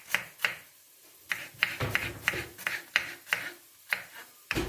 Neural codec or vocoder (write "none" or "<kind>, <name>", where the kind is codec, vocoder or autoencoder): vocoder, BigVGAN v2